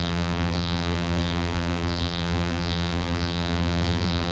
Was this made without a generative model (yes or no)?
no